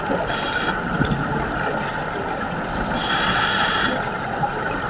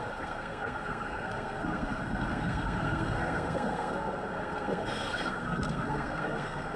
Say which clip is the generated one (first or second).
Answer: second